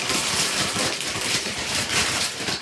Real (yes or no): no